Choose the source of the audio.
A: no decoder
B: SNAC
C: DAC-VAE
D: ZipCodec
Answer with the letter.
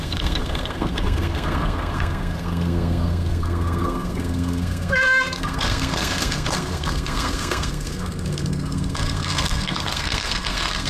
B